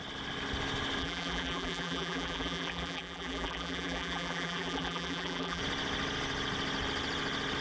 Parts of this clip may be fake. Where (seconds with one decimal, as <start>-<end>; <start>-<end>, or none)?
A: 1.0-5.6

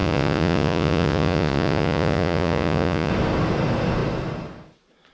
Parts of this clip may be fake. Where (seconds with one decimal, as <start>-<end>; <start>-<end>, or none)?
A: 0.0-3.1